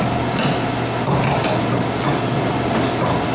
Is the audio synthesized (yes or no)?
no